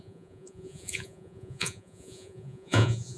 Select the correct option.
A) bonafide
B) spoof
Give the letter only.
B